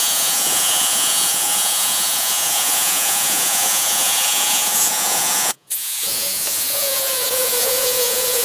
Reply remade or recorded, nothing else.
remade